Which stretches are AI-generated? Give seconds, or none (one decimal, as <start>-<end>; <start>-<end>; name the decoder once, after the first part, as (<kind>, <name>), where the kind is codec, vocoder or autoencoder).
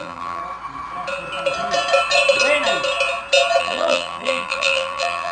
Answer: 0.0-0.4 (vocoder, BigVGAN v2); 3.6-5.3